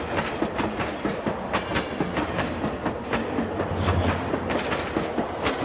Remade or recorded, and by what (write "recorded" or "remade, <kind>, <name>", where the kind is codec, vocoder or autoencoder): recorded